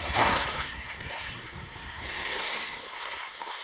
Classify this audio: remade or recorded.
remade